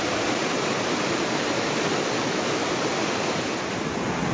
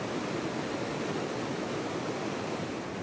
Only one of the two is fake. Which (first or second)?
first